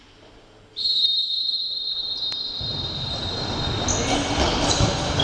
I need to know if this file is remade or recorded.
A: recorded